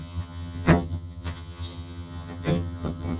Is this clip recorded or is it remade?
remade